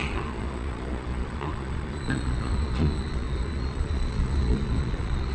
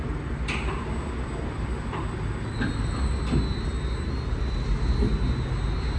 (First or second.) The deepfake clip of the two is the first